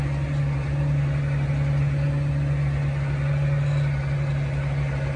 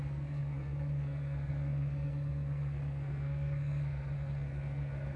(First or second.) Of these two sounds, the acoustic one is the first